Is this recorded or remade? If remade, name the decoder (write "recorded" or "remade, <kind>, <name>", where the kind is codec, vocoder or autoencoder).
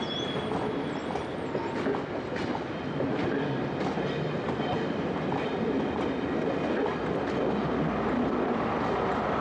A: recorded